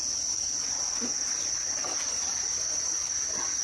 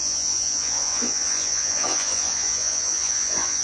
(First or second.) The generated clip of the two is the second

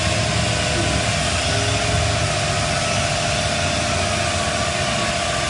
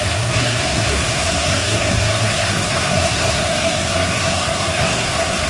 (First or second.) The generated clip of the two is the second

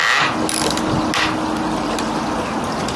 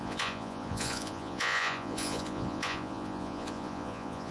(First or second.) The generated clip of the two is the second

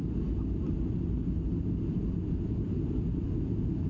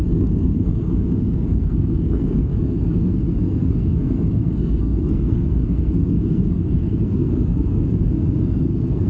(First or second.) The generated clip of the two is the second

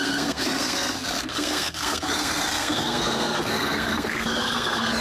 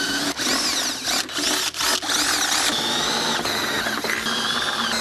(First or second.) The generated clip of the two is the first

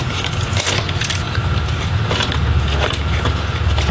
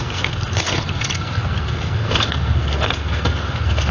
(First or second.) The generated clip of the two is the second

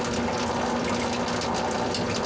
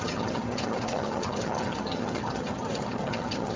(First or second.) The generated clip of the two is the second